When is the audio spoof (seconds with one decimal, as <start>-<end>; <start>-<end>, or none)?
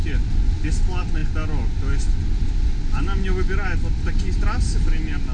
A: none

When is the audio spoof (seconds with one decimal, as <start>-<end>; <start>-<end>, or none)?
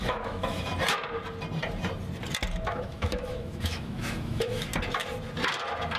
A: 0.0-0.7; 2.7-4.7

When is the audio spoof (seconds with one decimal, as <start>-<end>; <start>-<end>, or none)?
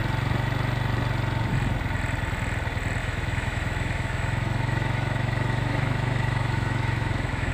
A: 3.0-7.5